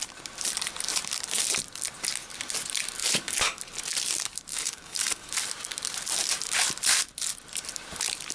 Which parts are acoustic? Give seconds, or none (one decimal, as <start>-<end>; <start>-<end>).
0.0-3.0; 3.6-4.5; 5.3-8.3